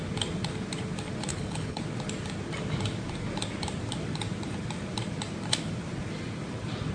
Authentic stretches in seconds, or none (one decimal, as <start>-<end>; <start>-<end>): 0.0-1.3; 1.8-6.9